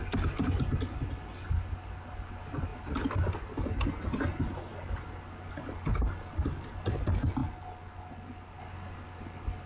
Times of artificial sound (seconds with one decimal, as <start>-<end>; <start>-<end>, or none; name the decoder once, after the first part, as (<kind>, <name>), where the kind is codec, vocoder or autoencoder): 2.7-3.6 (vocoder, BigVGAN v2)